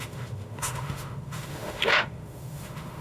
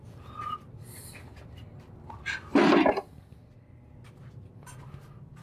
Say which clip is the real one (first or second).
second